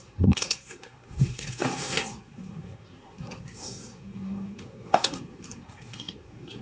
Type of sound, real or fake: fake